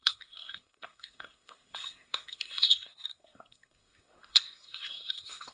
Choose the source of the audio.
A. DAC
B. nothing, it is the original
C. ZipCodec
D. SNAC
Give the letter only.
D